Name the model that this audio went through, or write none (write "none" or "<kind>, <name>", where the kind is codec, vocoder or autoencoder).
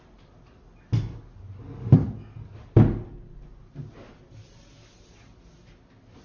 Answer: none